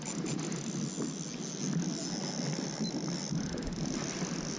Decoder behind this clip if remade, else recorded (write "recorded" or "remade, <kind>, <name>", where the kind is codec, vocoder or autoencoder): recorded